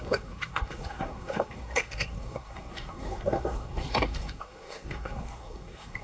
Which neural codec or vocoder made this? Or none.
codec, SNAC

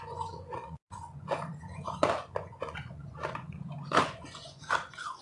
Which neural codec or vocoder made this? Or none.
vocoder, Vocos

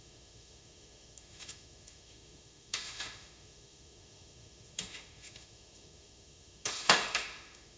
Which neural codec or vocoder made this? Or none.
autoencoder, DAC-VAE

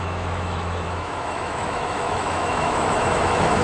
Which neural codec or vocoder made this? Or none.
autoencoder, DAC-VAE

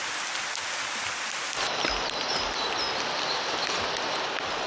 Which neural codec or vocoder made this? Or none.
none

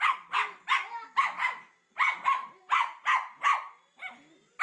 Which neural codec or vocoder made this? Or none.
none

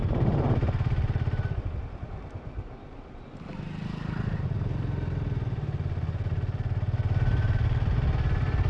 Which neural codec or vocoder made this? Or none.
none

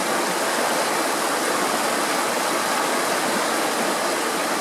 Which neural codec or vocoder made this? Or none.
none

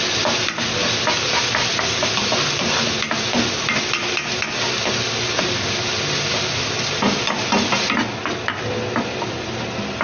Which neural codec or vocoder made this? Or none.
none